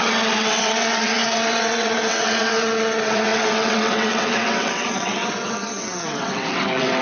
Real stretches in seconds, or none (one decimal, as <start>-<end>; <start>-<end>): none